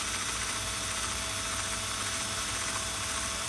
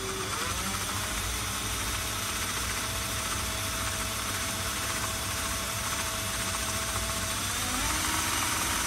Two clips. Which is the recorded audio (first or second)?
first